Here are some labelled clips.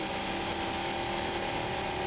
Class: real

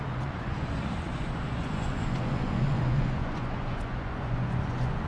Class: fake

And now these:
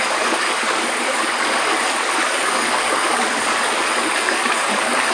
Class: fake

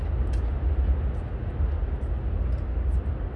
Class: real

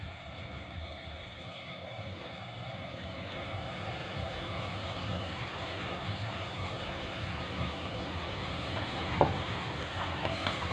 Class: fake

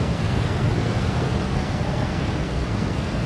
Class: fake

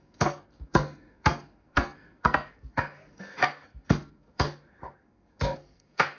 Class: fake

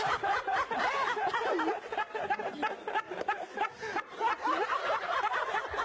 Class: fake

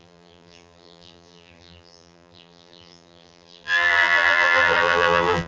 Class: fake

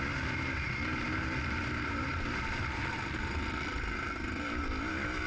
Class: real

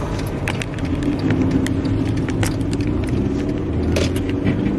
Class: real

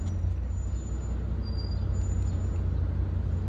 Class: real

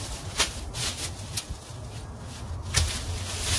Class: real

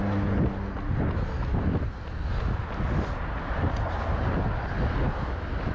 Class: real